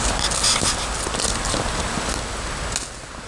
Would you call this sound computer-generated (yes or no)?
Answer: no